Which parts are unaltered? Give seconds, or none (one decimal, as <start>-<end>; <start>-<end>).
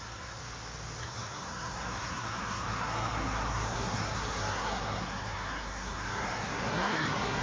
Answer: 0.4-1.0